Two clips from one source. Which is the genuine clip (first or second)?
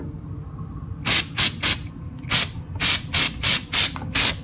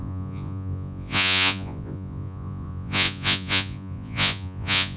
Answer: first